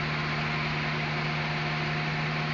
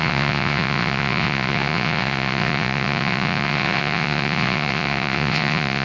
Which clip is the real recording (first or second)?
first